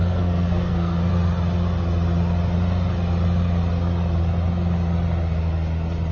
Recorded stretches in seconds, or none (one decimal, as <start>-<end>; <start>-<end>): 1.1-6.1

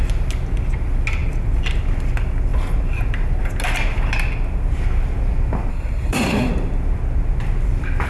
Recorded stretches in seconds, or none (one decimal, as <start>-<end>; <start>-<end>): 0.0-5.7; 6.5-8.1